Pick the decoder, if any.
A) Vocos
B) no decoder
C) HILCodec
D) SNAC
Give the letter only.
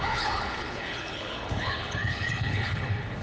C